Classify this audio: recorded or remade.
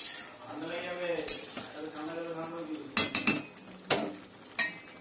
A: recorded